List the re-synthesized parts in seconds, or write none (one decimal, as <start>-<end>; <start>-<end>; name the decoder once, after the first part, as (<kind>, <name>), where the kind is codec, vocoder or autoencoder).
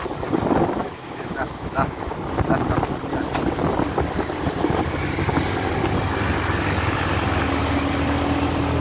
0.8-2.1 (autoencoder, DAC-VAE)